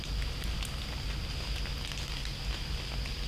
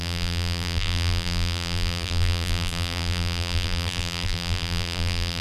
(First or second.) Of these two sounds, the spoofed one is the second